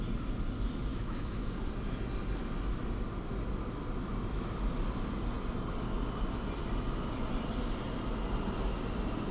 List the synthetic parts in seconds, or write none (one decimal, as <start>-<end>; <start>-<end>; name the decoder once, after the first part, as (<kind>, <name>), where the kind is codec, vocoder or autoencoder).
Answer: 0.9-1.5 (autoencoder, DAC-VAE)

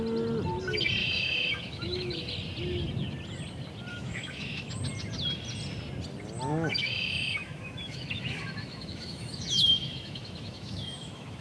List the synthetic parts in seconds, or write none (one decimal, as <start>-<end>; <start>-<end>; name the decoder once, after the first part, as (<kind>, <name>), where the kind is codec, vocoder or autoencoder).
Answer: 1.0-2.3 (autoencoder, DAC-VAE); 3.9-4.7; 6.7-11.4

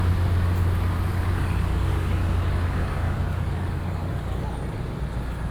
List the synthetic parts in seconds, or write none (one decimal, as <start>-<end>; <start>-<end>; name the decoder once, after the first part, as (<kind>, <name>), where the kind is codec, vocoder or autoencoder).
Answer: 1.1-4.4 (codec, DAC)